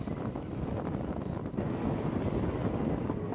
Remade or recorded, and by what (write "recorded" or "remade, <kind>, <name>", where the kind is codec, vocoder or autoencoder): recorded